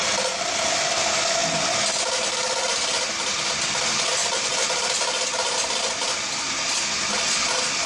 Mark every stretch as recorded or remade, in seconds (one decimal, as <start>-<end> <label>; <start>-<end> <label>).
0.0-7.9 recorded